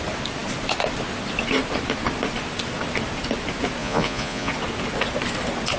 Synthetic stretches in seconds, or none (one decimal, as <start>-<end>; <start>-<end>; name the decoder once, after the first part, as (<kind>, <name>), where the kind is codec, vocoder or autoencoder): 3.8-4.5 (vocoder, Vocos)